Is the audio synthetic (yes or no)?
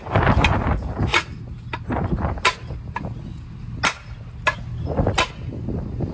no